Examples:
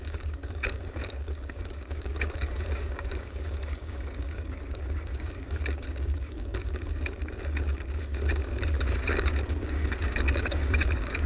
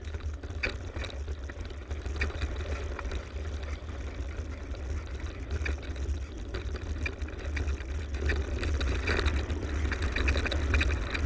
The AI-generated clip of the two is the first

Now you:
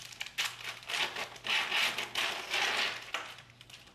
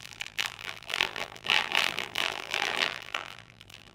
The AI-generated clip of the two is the second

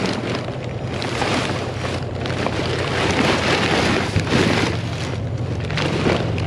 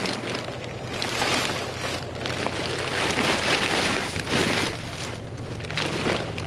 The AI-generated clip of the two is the first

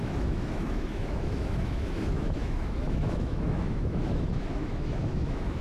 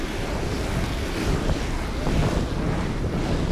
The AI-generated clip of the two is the first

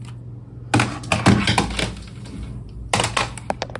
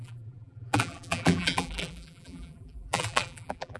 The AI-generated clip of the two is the second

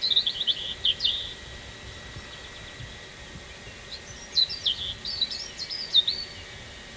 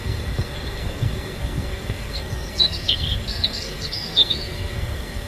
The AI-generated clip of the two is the second